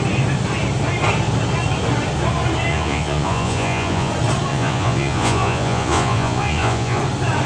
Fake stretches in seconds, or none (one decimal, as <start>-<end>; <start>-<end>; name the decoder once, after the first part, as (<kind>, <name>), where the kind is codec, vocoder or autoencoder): 2.7-4.1 (vocoder, Vocos); 4.5-7.0